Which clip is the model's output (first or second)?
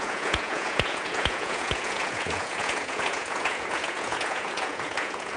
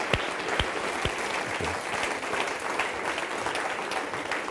first